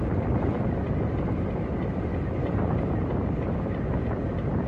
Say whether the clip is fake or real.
real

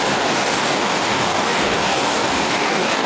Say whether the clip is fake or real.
fake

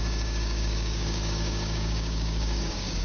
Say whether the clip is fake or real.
fake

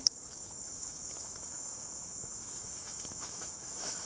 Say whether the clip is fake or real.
fake